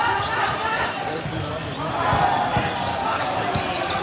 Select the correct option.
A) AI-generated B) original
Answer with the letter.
B